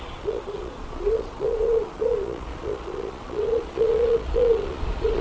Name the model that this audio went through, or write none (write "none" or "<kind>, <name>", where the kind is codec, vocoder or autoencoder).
vocoder, Vocos